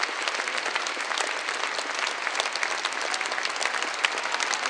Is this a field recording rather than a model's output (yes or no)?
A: yes